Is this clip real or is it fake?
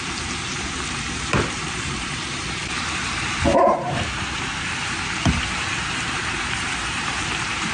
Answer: fake